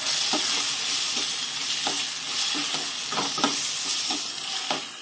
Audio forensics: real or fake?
real